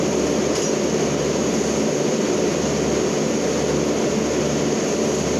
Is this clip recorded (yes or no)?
yes